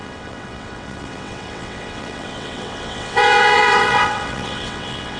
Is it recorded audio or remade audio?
remade